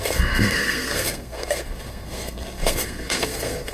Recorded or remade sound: remade